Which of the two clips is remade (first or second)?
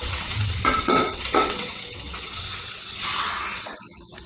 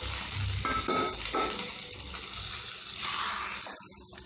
first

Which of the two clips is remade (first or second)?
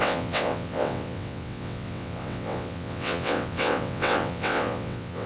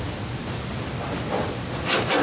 first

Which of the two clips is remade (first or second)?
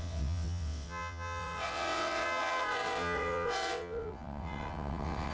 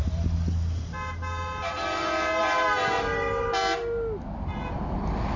first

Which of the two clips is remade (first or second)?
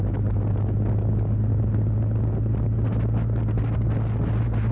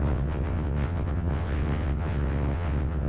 second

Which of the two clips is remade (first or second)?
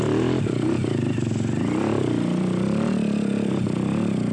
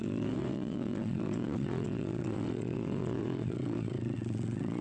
second